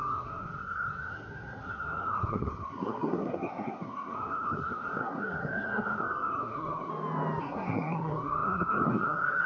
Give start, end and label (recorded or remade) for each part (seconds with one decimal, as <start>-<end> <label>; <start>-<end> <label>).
0.0-6.9 remade; 6.9-7.4 recorded; 7.4-9.5 remade